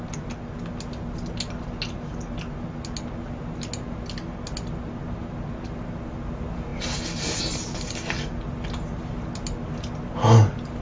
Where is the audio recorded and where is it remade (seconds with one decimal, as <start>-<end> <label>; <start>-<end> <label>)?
0.0-10.8 recorded